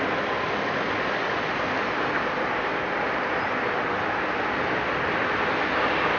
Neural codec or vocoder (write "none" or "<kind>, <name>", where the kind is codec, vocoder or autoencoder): none